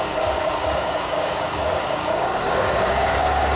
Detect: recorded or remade remade